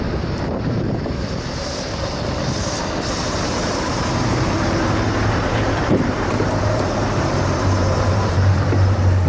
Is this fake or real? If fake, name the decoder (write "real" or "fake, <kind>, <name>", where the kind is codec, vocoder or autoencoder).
fake, vocoder, BigVGAN v2